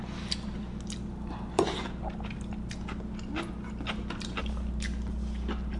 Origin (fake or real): real